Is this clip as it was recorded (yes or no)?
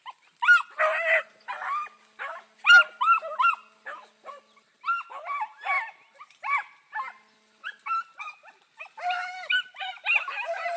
yes